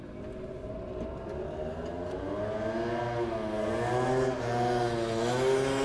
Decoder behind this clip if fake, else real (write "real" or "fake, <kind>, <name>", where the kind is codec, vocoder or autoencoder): real